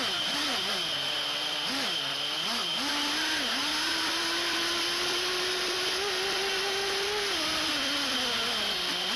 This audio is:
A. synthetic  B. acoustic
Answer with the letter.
B